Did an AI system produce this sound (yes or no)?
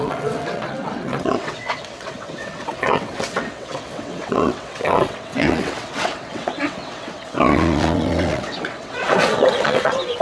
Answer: yes